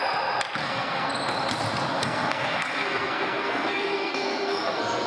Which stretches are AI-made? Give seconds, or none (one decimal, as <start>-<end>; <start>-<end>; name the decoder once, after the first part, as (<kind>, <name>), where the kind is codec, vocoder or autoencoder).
0.6-1.1 (codec, SNAC); 1.9-5.1